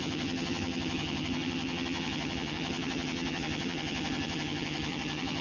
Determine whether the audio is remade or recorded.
remade